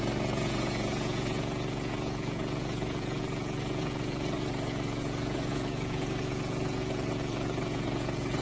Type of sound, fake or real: fake